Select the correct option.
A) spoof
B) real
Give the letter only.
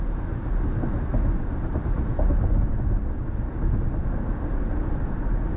B